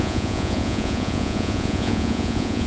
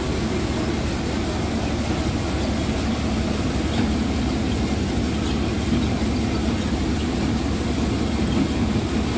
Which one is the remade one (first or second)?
first